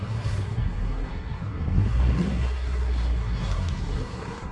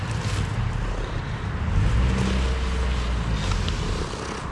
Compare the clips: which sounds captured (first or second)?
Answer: second